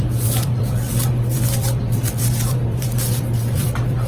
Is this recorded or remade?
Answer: remade